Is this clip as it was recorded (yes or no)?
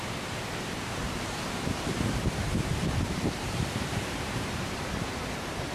no